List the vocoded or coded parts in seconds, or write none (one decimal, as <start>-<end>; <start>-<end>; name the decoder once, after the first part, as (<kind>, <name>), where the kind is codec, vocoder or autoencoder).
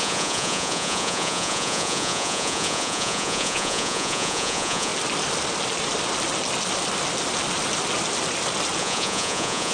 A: 0.0-4.9 (vocoder, Vocos); 8.8-9.7